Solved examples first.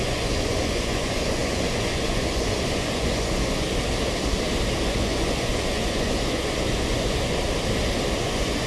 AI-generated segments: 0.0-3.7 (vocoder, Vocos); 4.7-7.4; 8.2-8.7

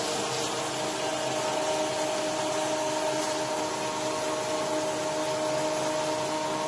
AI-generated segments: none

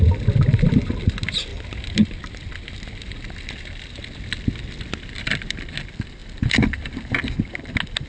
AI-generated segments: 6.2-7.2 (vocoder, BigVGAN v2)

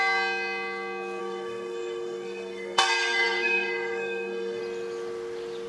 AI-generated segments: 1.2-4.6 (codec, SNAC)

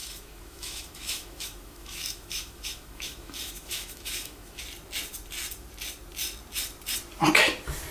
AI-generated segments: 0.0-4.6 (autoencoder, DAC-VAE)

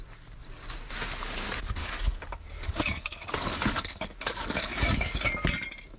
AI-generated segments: 1.8-5.3 (codec, DAC)

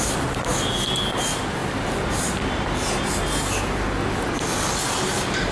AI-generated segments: none